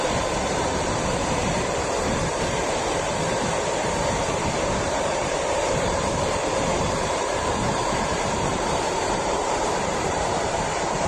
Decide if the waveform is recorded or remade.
remade